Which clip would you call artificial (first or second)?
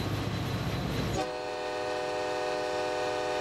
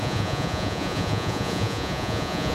second